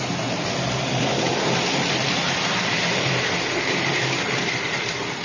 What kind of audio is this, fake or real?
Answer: fake